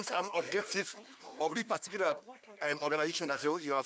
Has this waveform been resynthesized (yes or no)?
yes